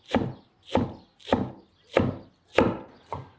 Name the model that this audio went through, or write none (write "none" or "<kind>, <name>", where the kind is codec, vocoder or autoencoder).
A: none